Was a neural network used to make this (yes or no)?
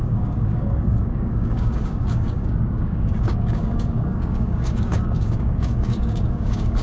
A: yes